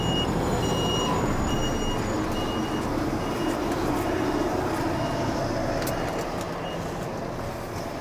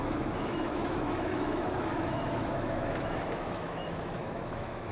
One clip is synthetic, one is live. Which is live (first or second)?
first